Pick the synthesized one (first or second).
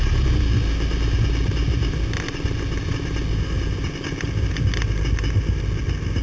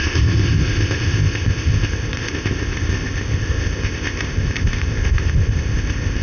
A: second